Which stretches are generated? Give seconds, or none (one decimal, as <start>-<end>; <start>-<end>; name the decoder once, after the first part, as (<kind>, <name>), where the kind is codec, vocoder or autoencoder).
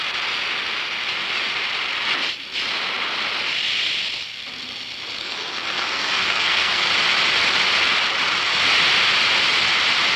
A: 5.2-6.9 (codec, SNAC)